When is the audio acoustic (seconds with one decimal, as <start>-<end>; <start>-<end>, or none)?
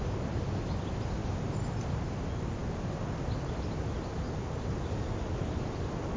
0.0-6.2